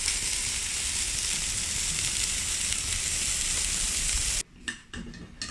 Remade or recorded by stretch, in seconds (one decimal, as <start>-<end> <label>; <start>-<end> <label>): 0.0-5.5 recorded